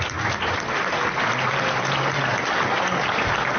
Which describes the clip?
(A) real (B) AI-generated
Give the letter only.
A